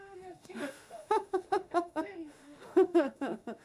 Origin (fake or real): fake